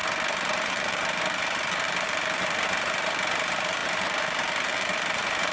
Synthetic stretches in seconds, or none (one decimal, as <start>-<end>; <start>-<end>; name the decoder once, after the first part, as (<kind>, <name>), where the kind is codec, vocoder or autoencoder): 0.7-5.5 (vocoder, BigVGAN v2)